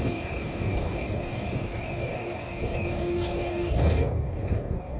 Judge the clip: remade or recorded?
remade